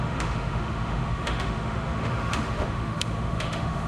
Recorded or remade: remade